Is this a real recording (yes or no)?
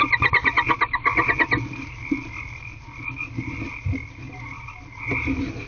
yes